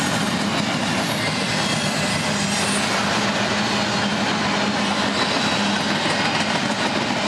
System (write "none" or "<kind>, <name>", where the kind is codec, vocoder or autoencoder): none